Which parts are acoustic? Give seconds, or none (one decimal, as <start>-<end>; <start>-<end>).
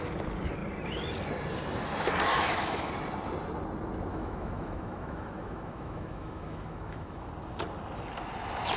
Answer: 0.0-2.3; 2.9-4.1; 7.3-8.8